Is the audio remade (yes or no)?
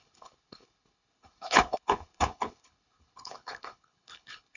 yes